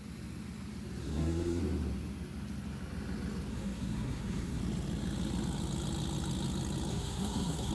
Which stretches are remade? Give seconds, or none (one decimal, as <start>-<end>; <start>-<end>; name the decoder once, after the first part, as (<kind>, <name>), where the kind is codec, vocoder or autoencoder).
1.0-1.6 (codec, SNAC); 3.5-4.6; 6.9-7.7